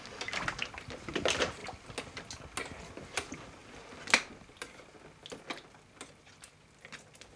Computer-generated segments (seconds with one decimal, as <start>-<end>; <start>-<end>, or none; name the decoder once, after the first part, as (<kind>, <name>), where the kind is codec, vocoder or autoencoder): none